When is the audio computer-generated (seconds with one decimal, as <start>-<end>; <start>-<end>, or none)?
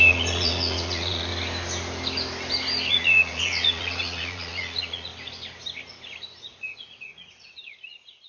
0.0-1.3; 2.9-5.1; 6.4-8.3